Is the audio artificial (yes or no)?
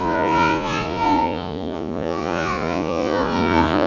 yes